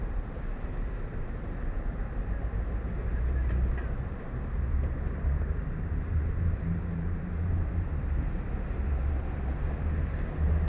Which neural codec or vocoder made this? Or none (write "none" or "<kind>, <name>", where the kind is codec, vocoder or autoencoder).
vocoder, BigVGAN v2